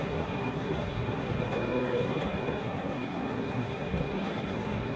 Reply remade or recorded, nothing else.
remade